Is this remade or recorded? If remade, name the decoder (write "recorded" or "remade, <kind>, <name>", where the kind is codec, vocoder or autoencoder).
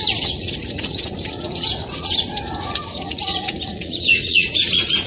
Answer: remade, vocoder, Vocos